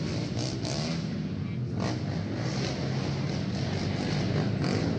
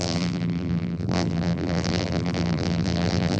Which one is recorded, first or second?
first